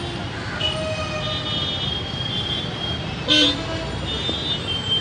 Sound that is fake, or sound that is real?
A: real